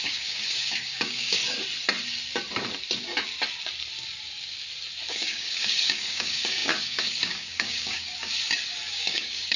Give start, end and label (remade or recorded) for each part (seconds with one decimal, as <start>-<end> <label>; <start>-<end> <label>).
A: 0.0-1.4 remade; 1.4-5.1 recorded; 5.1-8.1 remade; 8.1-8.9 recorded; 8.9-9.6 remade